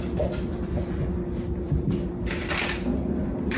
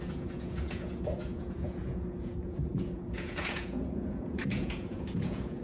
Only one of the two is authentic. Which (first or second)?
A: first